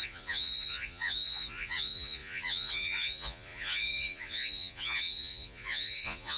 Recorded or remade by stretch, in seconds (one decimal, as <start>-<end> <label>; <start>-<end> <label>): 0.0-6.4 remade